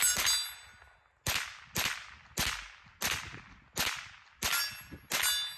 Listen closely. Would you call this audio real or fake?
real